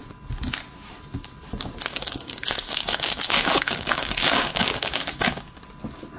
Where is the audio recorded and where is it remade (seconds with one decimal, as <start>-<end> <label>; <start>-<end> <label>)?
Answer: 0.0-1.9 recorded; 1.9-5.6 remade; 5.6-6.2 recorded